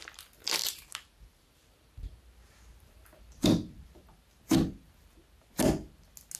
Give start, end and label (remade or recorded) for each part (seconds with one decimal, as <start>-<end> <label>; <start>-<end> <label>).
0.0-0.6 recorded; 0.6-4.4 remade; 4.4-6.4 recorded